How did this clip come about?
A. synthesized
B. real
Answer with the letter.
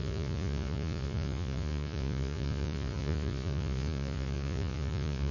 A